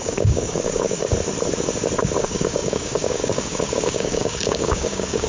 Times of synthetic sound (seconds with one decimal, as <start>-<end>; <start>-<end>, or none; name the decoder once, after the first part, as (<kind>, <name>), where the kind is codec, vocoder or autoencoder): 0.0-1.1 (codec, DAC); 2.2-5.3